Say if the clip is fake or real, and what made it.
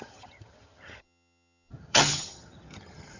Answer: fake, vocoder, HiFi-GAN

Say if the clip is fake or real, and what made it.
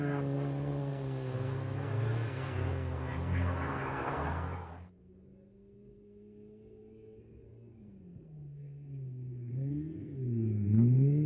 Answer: fake, codec, SNAC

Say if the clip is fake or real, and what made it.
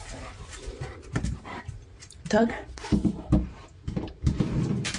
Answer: fake, vocoder, BigVGAN v2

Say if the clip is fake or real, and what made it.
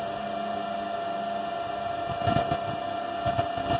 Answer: real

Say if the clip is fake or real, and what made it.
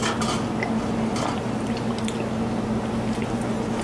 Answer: real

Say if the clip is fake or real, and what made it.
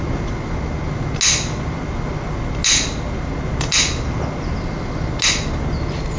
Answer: real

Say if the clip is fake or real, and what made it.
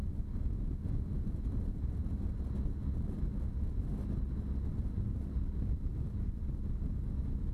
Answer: real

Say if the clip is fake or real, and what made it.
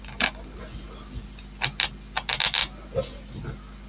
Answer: real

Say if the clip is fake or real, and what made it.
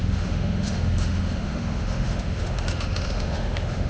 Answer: fake, autoencoder, DAC-VAE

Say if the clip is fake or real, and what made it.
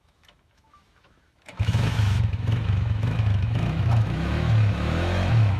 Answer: fake, autoencoder, DAC-VAE